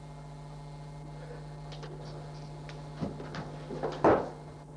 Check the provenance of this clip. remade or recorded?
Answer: recorded